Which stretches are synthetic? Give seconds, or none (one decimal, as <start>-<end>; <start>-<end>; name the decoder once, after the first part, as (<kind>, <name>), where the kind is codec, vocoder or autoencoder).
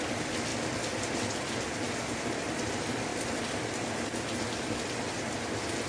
none